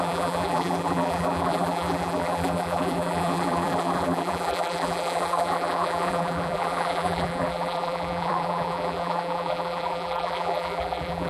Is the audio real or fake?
fake